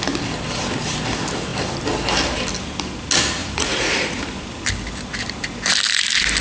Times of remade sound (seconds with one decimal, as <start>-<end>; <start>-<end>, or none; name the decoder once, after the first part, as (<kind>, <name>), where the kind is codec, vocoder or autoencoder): 3.4-4.2 (vocoder, Vocos)